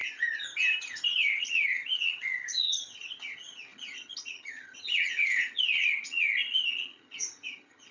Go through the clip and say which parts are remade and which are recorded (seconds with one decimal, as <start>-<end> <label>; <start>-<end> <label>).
0.0-7.9 remade